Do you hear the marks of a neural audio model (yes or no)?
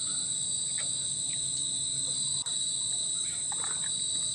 no